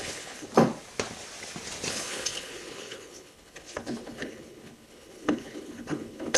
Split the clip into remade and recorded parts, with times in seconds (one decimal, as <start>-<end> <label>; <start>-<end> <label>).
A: 0.0-0.5 remade; 0.5-1.9 recorded; 1.9-6.4 remade